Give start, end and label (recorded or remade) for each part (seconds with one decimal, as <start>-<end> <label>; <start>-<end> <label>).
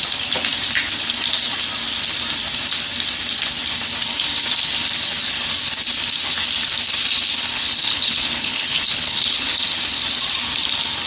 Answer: 0.0-7.5 recorded; 7.5-9.5 remade; 9.5-11.1 recorded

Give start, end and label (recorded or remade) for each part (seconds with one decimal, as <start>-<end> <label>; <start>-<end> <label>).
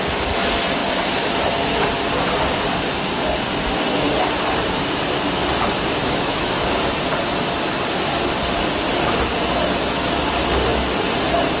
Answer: 0.0-6.0 recorded; 6.0-6.8 remade; 6.8-11.6 recorded